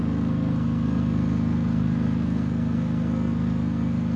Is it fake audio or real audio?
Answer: fake